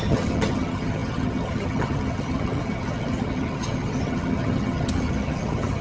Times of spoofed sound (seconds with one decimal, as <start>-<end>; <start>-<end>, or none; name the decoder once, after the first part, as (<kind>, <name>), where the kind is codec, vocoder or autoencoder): 0.0-5.8 (vocoder, HiFi-GAN)